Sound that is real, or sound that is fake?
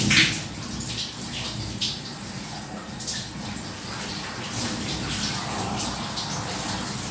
real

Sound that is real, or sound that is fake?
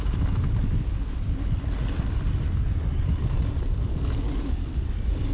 real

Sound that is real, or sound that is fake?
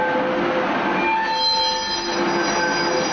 real